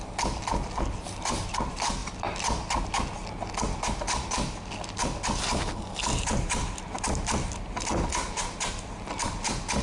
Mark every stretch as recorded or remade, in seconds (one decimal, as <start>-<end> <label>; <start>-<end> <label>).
0.0-9.8 recorded